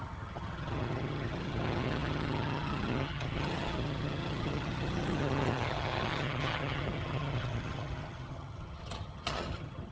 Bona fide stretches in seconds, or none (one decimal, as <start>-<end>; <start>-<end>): none